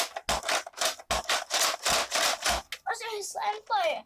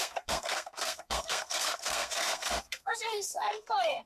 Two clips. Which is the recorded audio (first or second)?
first